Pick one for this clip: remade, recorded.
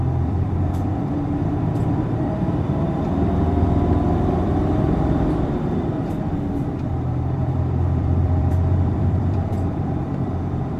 remade